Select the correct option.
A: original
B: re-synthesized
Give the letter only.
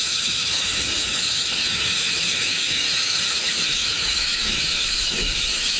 B